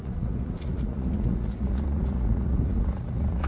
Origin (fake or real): fake